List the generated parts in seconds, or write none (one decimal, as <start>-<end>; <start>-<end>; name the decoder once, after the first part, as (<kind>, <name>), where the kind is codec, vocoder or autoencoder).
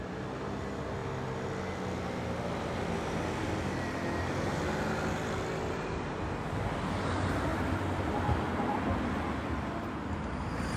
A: none